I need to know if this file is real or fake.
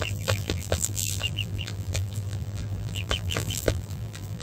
fake